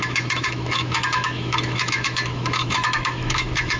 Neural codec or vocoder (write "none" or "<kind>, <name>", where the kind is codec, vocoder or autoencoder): autoencoder, DAC-VAE